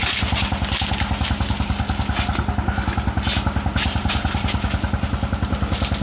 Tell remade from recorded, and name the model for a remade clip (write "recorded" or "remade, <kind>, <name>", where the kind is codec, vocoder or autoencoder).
recorded